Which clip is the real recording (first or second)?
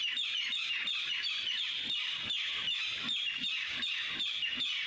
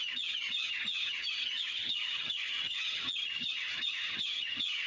first